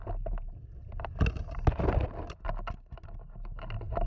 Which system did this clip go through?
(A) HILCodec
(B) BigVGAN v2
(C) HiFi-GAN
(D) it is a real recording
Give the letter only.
D